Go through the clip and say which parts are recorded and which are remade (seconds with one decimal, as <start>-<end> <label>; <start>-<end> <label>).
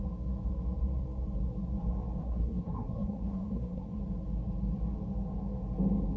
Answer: 0.0-2.2 recorded; 2.2-4.0 remade; 4.0-6.2 recorded